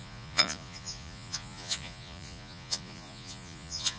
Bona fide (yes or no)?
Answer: no